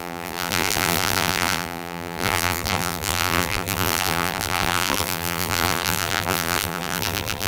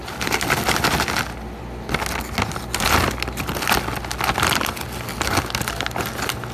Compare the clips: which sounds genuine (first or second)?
second